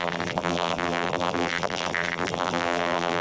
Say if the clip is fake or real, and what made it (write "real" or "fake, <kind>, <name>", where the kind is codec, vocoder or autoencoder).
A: fake, vocoder, BigVGAN v2